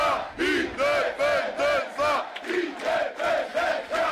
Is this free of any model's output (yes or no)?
yes